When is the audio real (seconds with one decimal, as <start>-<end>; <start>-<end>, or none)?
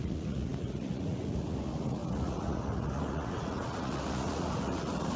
none